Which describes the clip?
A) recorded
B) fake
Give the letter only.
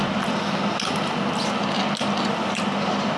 A